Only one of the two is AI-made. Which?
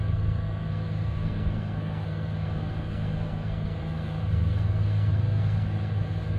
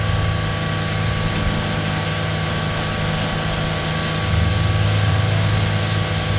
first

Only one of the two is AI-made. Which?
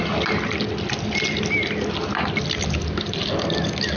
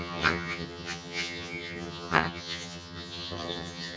second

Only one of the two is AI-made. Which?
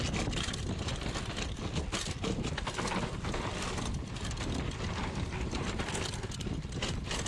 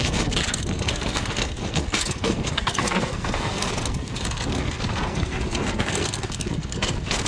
second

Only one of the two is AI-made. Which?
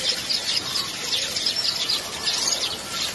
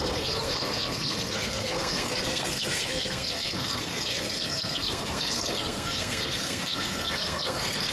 second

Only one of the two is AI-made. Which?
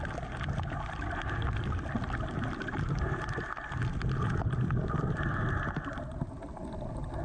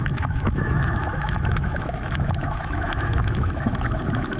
second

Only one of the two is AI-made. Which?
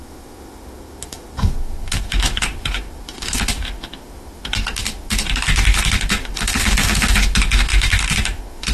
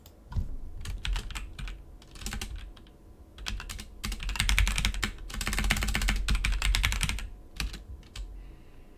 first